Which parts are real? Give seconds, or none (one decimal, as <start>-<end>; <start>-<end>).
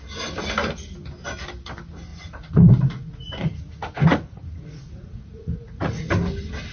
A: 0.0-2.1; 6.1-6.7